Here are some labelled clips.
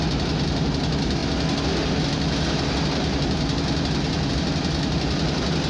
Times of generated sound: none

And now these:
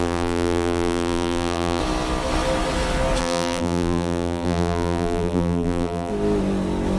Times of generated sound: 0.0-1.8 (vocoder, BigVGAN v2); 3.2-6.1

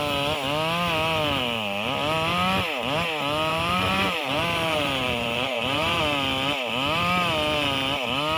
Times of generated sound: 3.5-6.0 (vocoder, BigVGAN v2)

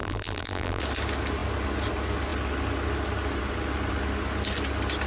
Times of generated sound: 0.0-0.8 (vocoder, BigVGAN v2)

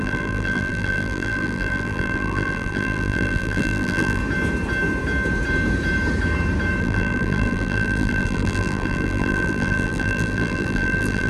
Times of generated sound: 0.0-4.2 (vocoder, BigVGAN v2); 6.8-11.3

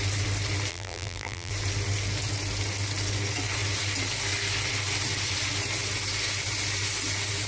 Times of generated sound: 0.7-1.5 (vocoder, BigVGAN v2)

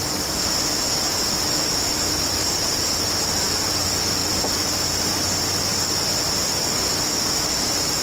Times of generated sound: 2.4-3.0 (vocoder, BigVGAN v2); 4.2-5.1